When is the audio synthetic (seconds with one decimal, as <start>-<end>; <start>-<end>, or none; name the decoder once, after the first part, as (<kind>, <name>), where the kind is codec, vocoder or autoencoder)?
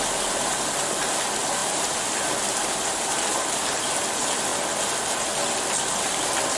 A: 1.6-2.3 (vocoder, BigVGAN v2)